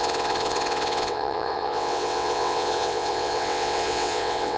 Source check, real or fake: fake